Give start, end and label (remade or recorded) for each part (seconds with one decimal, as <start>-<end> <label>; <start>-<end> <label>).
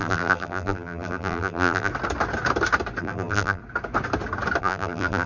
0.0-1.9 remade; 1.9-3.0 recorded; 3.0-3.6 remade; 3.6-4.6 recorded; 4.6-5.3 remade